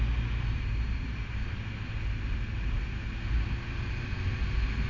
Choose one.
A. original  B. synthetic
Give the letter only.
A